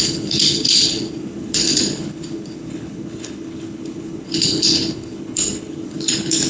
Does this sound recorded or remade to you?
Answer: remade